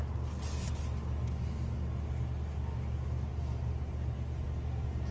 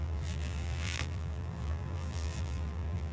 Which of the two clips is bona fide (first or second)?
first